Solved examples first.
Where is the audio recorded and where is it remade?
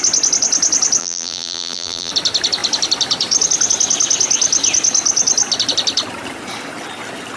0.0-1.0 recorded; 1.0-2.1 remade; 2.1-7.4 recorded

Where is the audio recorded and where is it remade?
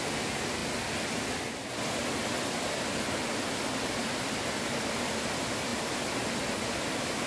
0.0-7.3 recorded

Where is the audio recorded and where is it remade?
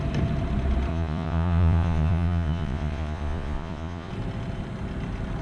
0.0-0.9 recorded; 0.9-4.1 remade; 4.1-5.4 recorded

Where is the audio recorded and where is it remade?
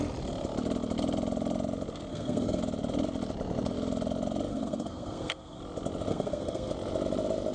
0.0-2.1 recorded; 2.1-2.6 remade; 2.6-4.5 recorded; 4.5-5.6 remade; 5.6-6.1 recorded; 6.1-6.7 remade; 6.7-7.5 recorded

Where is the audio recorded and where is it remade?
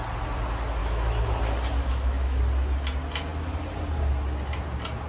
0.0-0.8 recorded; 0.8-1.4 remade; 1.4-1.8 recorded; 1.8-2.4 remade; 2.4-5.1 recorded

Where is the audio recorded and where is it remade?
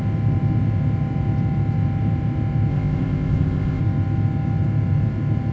0.0-2.7 recorded; 2.7-3.8 remade; 3.8-5.5 recorded